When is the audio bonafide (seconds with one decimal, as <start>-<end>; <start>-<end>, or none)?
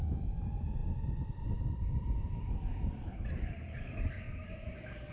0.0-5.1